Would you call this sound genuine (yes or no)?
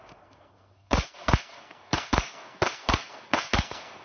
no